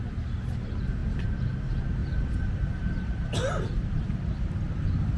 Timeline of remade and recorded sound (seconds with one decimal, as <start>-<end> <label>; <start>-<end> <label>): 0.0-2.0 recorded; 2.0-5.2 remade